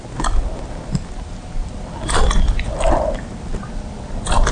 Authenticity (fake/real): real